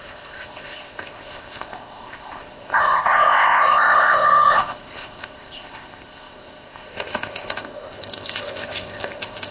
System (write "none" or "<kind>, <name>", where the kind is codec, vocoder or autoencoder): codec, ZipCodec